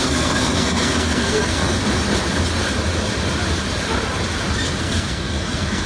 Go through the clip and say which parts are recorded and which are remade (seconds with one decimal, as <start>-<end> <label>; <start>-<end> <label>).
0.0-1.8 remade; 1.8-4.8 recorded; 4.8-5.9 remade